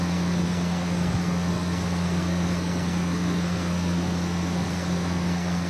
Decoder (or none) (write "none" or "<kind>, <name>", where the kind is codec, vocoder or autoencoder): codec, SNAC